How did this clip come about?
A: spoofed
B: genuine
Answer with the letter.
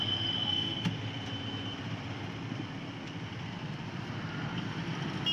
B